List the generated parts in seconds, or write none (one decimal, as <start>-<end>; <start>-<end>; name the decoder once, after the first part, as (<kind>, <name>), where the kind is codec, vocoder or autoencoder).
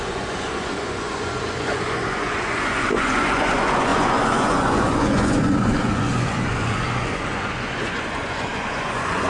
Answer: 0.0-9.3 (vocoder, Vocos)